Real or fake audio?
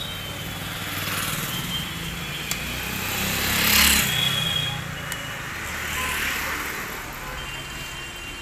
real